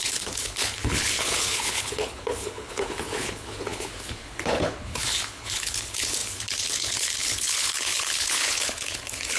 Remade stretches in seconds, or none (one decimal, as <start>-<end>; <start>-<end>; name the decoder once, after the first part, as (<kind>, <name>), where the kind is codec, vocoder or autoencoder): 0.0-9.4 (codec, HILCodec)